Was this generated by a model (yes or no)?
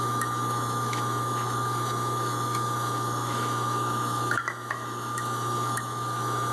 yes